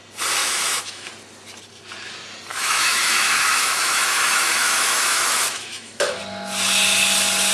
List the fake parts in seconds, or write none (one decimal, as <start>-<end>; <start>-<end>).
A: 0.4-1.1; 2.5-6.2